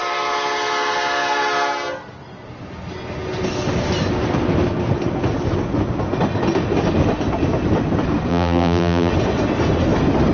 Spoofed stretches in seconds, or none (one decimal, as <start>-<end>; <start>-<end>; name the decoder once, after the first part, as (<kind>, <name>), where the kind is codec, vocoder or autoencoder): 8.3-9.1 (vocoder, BigVGAN v2)